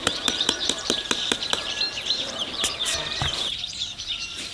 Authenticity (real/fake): fake